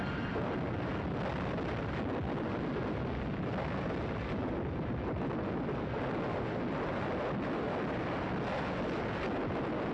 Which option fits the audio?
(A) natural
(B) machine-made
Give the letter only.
A